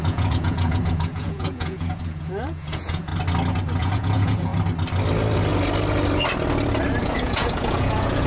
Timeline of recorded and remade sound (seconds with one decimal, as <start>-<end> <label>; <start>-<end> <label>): 0.0-3.1 remade; 3.1-3.8 recorded; 3.8-4.5 remade; 4.5-7.0 recorded; 7.0-8.3 remade